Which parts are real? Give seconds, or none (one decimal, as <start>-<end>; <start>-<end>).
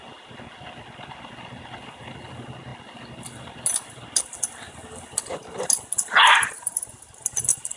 0.0-7.8